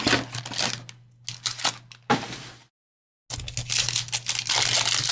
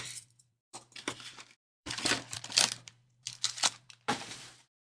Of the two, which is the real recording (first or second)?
first